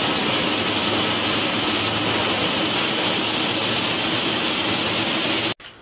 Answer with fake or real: real